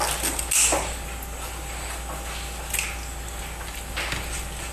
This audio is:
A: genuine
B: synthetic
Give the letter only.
A